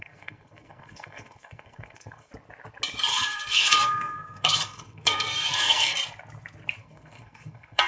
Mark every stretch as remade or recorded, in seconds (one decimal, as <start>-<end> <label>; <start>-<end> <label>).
0.0-2.3 remade; 2.3-3.1 recorded; 3.1-5.9 remade; 5.9-6.8 recorded; 6.8-7.9 remade